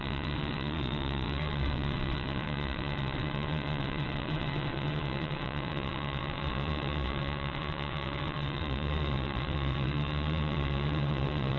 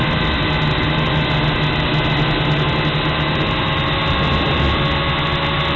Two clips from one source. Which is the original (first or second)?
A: second